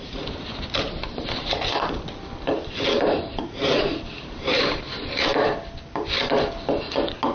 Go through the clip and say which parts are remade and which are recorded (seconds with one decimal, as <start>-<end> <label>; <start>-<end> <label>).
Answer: 0.0-1.0 recorded; 1.0-4.8 remade; 4.8-7.3 recorded

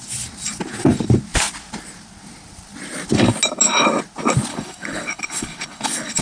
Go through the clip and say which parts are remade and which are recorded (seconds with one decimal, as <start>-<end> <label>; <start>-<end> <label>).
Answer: 0.0-4.5 recorded; 4.5-6.2 remade